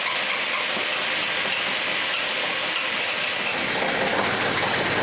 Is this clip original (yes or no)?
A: yes